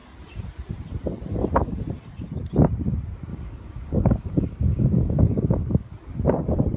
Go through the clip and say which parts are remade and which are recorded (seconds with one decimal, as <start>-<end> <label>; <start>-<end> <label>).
0.0-3.3 recorded; 3.3-5.9 remade; 5.9-6.8 recorded